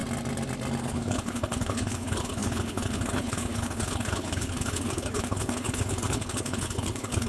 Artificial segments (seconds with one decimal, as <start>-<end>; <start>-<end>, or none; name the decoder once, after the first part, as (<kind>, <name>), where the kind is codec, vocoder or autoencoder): 0.8-7.3 (codec, HILCodec)